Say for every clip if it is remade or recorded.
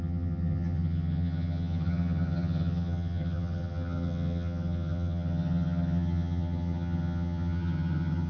remade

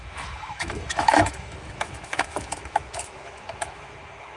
remade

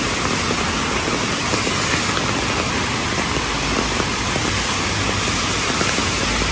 recorded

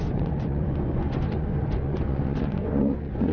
remade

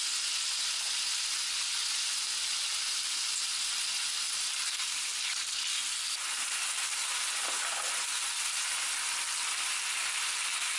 recorded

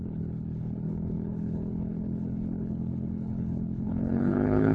remade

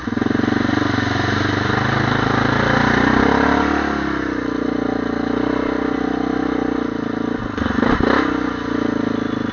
recorded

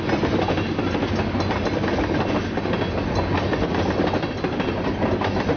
recorded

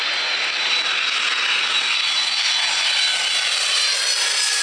recorded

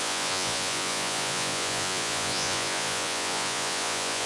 remade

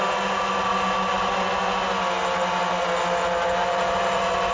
recorded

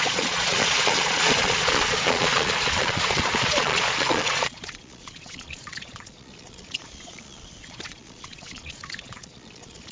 remade